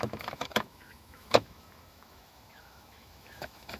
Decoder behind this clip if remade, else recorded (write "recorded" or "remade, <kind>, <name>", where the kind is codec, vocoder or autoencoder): remade, autoencoder, DAC-VAE